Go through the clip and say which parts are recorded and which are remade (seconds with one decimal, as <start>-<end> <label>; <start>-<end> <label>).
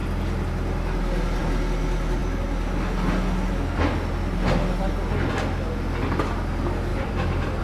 0.0-6.9 recorded; 6.9-7.6 remade